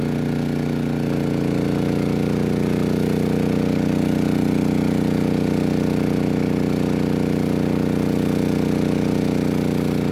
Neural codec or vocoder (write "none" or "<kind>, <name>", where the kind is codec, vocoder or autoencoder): none